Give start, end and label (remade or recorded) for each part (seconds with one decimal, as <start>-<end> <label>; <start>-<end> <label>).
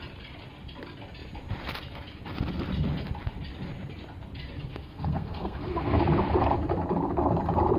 0.0-4.7 recorded; 4.7-6.0 remade; 6.0-7.8 recorded